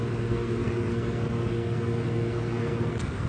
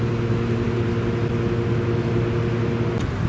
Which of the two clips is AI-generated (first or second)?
first